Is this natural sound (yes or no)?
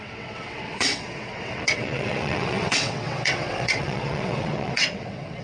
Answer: no